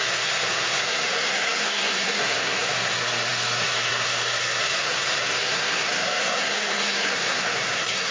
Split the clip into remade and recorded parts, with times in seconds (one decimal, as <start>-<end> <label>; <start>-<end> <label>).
0.0-8.1 remade

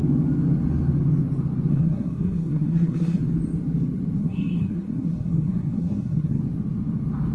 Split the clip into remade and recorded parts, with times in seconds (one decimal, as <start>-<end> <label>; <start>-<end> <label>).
0.0-1.7 recorded; 1.7-3.2 remade; 3.2-4.2 recorded; 4.2-6.4 remade; 6.4-7.3 recorded

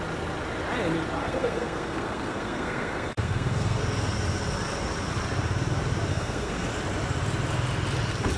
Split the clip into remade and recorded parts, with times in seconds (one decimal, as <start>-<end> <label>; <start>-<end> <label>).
0.0-1.2 recorded; 1.2-3.8 remade; 3.8-6.1 recorded; 6.1-6.7 remade; 6.7-8.4 recorded

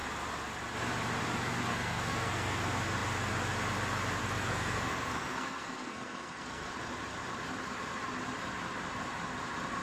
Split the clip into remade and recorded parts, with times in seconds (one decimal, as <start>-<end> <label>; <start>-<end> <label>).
0.0-1.7 recorded; 1.7-2.6 remade; 2.6-4.2 recorded; 4.2-6.7 remade; 6.7-9.8 recorded

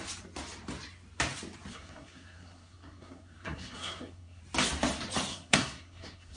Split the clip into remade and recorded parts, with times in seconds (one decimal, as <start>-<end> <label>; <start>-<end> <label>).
0.0-1.7 recorded; 1.7-4.4 remade; 4.4-5.3 recorded; 5.3-6.4 remade

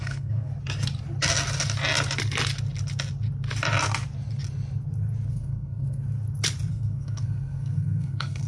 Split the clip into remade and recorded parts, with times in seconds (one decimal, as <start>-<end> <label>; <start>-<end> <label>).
0.0-0.5 remade; 0.5-5.3 recorded; 5.3-6.0 remade; 6.0-6.7 recorded; 6.7-8.5 remade